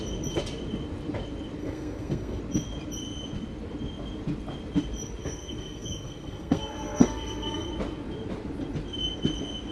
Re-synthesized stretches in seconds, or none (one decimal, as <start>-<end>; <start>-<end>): 1.6-2.4; 5.2-7.7